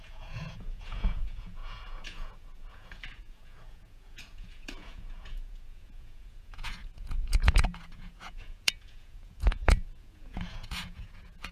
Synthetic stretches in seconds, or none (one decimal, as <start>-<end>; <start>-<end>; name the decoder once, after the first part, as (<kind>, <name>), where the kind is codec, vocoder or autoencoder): 0.0-11.5 (vocoder, Vocos)